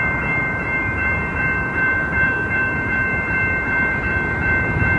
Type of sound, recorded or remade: remade